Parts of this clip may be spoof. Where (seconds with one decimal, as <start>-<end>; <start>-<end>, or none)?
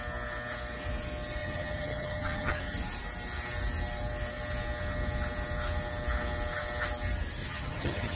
1.4-2.6; 7.4-8.2